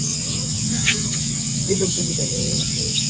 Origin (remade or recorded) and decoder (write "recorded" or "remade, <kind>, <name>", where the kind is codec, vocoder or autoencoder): remade, vocoder, WaveNeXt